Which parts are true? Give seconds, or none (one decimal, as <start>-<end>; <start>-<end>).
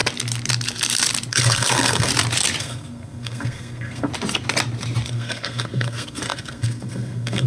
0.0-1.3; 2.1-2.6; 4.1-5.1